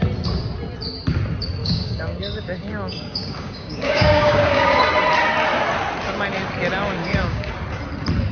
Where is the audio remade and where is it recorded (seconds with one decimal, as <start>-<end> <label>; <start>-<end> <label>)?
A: 0.0-1.6 recorded; 1.6-4.8 remade; 4.8-7.0 recorded; 7.0-7.5 remade; 7.5-8.3 recorded